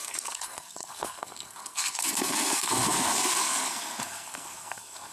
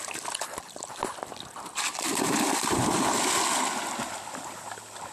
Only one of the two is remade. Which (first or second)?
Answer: first